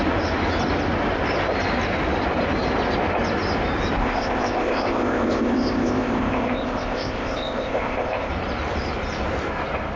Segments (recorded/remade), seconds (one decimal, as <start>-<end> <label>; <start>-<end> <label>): 0.0-4.0 recorded; 4.0-8.3 remade; 8.3-10.0 recorded